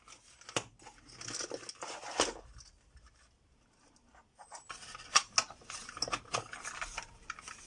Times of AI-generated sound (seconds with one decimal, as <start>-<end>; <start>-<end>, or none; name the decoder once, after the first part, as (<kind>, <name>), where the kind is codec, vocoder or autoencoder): none